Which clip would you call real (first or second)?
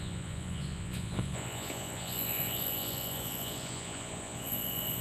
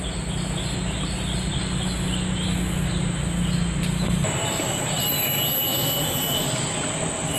second